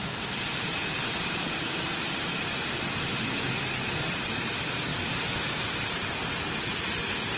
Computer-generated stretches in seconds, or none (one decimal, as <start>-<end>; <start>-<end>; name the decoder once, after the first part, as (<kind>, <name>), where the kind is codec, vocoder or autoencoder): 0.7-3.5 (vocoder, BigVGAN v2); 4.9-5.6